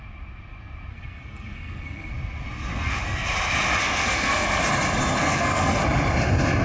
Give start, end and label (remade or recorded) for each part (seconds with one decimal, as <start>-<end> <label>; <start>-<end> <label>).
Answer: 0.0-0.9 recorded; 0.9-2.1 remade; 2.1-3.8 recorded; 3.8-4.6 remade; 4.6-5.2 recorded; 5.2-5.8 remade; 5.8-6.6 recorded